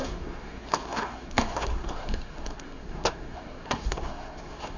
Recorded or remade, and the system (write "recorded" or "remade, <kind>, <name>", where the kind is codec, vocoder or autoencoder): remade, codec, SNAC